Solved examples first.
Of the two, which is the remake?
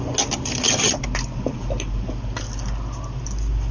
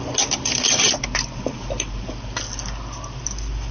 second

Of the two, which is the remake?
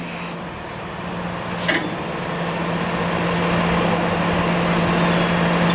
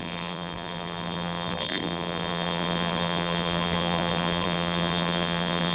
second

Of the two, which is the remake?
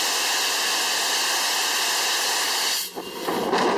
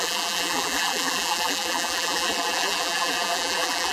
second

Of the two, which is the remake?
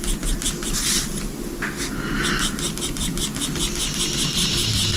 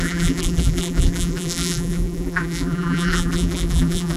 second